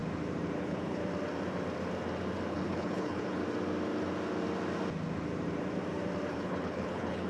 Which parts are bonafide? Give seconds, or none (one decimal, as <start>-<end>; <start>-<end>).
0.0-0.6; 1.0-2.5; 3.4-6.3